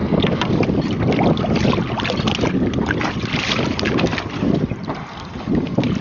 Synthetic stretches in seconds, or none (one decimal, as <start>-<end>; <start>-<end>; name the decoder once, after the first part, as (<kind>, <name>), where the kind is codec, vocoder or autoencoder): none